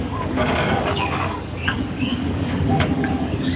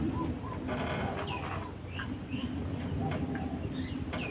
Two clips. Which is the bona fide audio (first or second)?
second